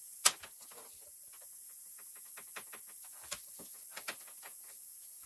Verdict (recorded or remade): recorded